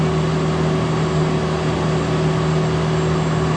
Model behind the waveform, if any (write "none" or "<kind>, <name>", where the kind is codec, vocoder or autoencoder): none